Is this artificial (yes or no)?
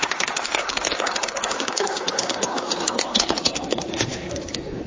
yes